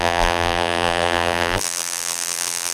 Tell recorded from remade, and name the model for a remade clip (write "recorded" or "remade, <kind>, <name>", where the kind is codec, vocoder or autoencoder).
remade, vocoder, BigVGAN v2